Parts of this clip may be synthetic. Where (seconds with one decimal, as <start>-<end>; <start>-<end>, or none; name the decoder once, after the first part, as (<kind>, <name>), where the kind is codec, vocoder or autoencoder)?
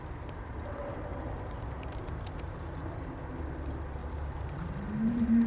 1.1-2.9 (vocoder, BigVGAN v2); 4.0-5.5